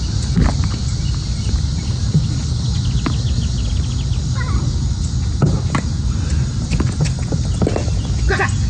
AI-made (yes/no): no